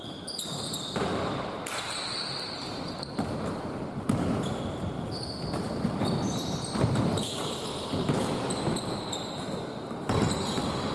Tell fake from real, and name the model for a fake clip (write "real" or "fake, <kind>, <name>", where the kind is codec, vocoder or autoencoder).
real